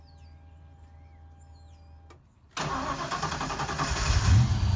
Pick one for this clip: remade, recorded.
recorded